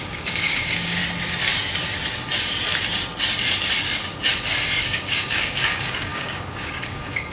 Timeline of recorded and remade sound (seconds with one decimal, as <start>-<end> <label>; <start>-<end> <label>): 0.0-1.0 remade; 1.0-4.8 recorded; 4.8-7.3 remade

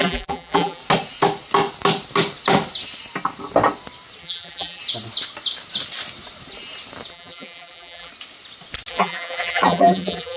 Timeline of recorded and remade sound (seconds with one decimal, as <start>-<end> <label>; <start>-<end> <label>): 0.0-0.8 remade; 0.8-4.2 recorded; 4.2-4.8 remade; 4.8-7.1 recorded; 7.1-8.1 remade; 8.1-8.9 recorded; 8.9-10.4 remade